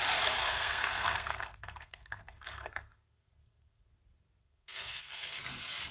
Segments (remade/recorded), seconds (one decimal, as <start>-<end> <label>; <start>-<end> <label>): 0.0-0.4 recorded; 0.4-3.9 remade; 3.9-4.4 recorded; 4.4-5.4 remade; 5.4-5.9 recorded